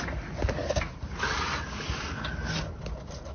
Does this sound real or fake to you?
real